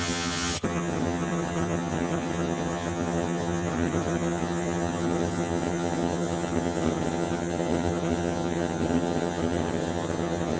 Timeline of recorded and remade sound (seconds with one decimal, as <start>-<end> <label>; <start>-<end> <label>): 0.0-10.6 remade